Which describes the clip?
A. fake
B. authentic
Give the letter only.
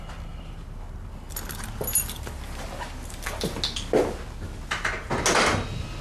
B